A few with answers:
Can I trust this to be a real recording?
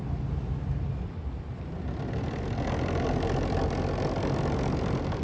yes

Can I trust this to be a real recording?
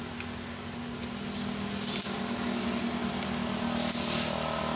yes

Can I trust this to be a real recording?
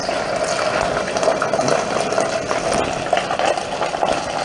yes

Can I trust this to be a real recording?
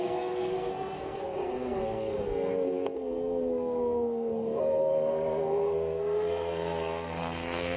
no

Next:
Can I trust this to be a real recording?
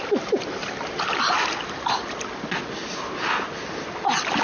yes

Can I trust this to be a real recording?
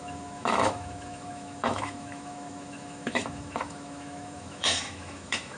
no